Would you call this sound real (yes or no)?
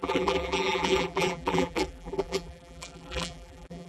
no